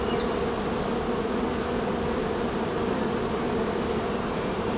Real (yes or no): yes